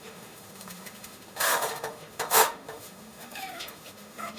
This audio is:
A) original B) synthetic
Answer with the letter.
B